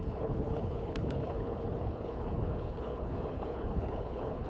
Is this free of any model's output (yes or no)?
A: no